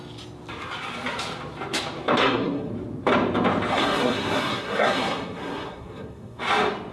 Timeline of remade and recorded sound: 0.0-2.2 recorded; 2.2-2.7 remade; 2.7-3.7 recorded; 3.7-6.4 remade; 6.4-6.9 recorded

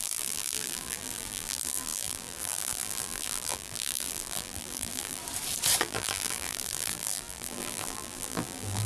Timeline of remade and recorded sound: 0.0-5.2 remade; 5.2-5.8 recorded; 5.8-8.9 remade

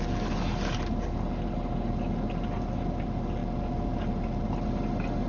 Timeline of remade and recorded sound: 0.0-5.3 recorded